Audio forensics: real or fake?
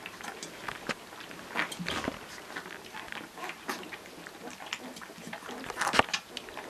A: real